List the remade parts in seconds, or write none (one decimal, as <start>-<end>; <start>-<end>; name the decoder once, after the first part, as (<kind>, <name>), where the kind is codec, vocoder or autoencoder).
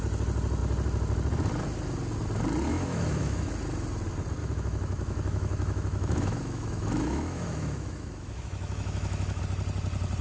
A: 2.7-3.5 (autoencoder, DAC-VAE); 4.4-9.4